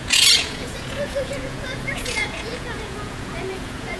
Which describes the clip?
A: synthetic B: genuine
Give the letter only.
A